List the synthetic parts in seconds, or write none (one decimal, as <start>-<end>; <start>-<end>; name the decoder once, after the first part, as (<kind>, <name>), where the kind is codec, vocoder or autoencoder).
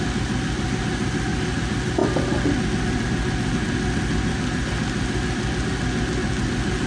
none